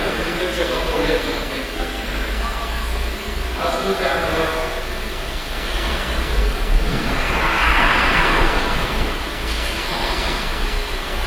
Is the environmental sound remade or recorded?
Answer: remade